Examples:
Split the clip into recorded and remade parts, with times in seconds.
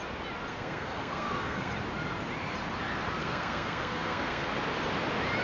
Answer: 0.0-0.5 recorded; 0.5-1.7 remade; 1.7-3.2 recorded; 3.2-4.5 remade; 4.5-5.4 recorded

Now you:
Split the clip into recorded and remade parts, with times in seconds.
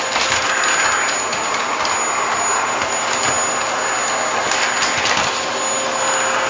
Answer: 0.0-6.5 recorded